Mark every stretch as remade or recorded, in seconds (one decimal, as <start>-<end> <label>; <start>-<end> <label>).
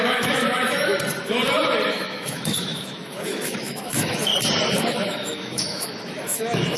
0.0-0.9 remade; 0.9-1.9 recorded; 1.9-4.3 remade; 4.3-4.8 recorded; 4.8-6.8 remade